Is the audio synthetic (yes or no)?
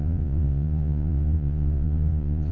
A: yes